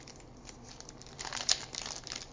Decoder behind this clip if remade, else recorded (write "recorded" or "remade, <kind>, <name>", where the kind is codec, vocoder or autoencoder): recorded